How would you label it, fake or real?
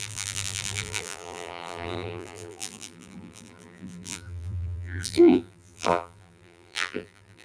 fake